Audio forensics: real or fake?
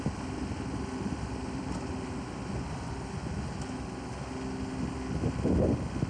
real